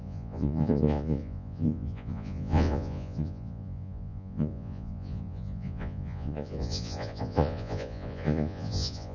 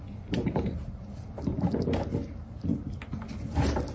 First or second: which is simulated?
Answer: first